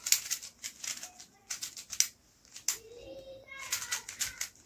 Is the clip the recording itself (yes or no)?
yes